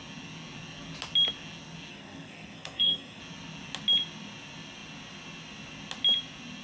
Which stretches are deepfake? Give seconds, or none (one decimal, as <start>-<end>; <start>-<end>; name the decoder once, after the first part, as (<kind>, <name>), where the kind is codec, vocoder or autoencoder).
1.9-3.2 (codec, SNAC)